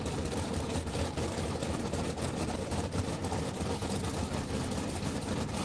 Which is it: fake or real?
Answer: real